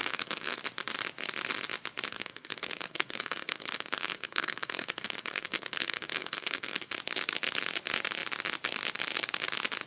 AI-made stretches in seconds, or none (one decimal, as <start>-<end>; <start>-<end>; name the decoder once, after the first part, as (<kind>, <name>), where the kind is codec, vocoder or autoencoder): 0.0-0.6 (codec, SNAC); 2.1-6.9